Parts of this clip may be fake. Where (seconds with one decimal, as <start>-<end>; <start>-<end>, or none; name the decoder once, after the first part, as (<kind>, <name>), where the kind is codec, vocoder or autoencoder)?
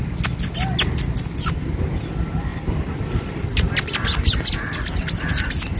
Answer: 2.5-3.8 (vocoder, BigVGAN v2)